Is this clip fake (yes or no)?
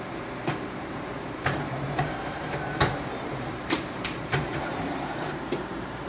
yes